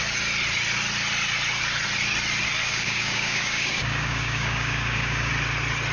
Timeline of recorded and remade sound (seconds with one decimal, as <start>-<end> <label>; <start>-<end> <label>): 0.0-2.6 recorded; 2.6-5.3 remade; 5.3-5.9 recorded